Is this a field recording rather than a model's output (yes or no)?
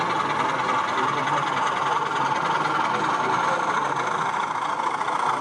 yes